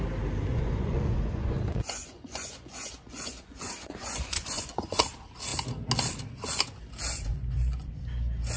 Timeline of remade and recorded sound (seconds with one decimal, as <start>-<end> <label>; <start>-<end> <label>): 0.0-0.5 recorded; 0.5-5.0 remade; 5.0-7.3 recorded; 7.3-7.9 remade; 7.9-8.6 recorded